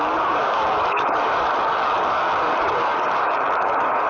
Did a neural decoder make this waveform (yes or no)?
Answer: yes